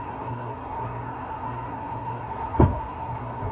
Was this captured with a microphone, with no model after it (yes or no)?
no